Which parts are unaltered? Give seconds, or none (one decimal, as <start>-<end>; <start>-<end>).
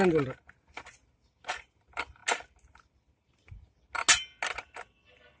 0.0-5.4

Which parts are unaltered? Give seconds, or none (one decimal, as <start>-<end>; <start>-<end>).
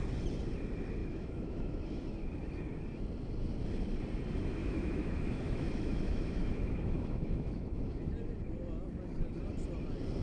0.0-1.0; 1.8-4.6; 8.1-10.2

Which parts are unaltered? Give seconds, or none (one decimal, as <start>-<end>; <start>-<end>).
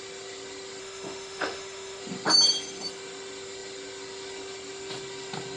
0.0-0.8; 2.0-5.6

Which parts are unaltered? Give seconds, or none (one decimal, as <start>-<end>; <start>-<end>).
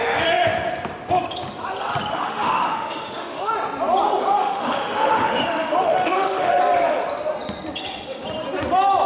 0.0-2.1; 3.5-4.4; 6.6-9.1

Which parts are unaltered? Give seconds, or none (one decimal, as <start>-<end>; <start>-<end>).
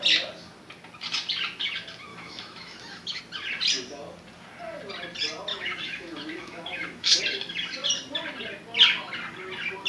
0.0-2.1; 3.2-5.5; 7.2-9.9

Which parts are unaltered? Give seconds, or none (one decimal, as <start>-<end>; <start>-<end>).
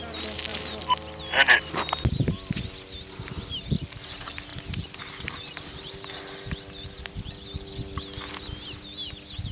0.0-9.5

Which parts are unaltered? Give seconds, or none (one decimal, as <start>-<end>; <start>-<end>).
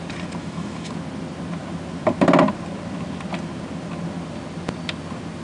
0.0-0.4; 0.9-5.4